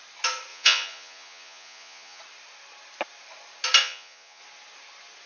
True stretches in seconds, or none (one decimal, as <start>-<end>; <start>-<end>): 0.0-0.5; 2.2-3.8; 4.4-5.3